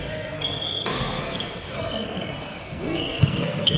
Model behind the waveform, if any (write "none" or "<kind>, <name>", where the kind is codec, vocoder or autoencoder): codec, SNAC